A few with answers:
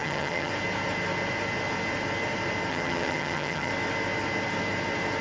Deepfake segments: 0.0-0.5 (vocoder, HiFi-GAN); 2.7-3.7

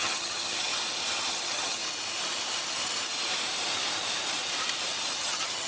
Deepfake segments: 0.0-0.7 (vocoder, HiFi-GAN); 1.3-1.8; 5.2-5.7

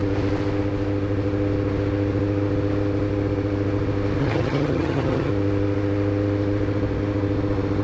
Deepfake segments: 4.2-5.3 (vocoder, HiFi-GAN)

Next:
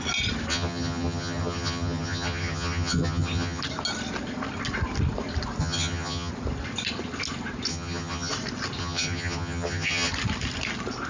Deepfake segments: 0.5-3.6 (vocoder, HiFi-GAN); 5.6-6.3; 7.7-8.3; 8.8-10.1

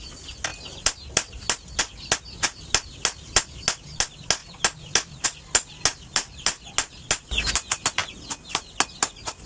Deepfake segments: none

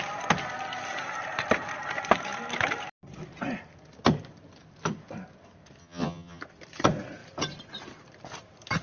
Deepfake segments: 5.8-6.4 (vocoder, HiFi-GAN)

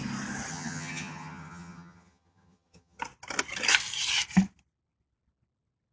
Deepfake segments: 0.5-3.0 (vocoder, HiFi-GAN)